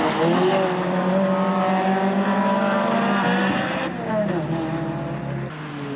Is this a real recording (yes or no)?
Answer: yes